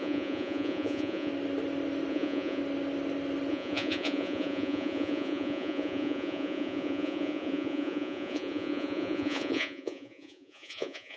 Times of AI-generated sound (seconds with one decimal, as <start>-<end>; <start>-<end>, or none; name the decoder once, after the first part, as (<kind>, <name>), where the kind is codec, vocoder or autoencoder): 0.0-1.3 (vocoder, Vocos); 2.1-2.6; 3.5-11.2